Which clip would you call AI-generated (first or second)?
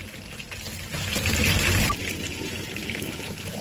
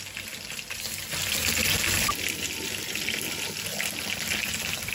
first